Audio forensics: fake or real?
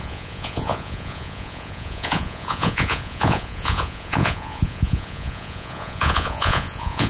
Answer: fake